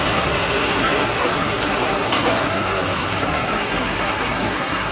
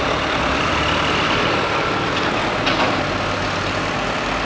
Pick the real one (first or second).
second